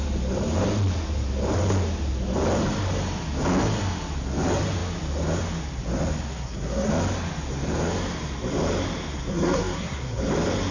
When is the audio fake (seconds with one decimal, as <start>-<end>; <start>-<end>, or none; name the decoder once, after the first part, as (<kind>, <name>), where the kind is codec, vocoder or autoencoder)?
6.3-6.9 (codec, SNAC); 9.3-10.2